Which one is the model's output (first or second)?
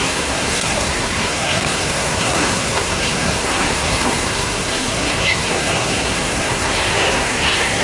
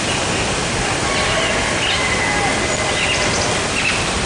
first